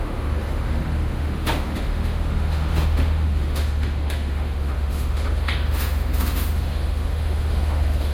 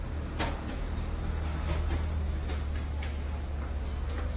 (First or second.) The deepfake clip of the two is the first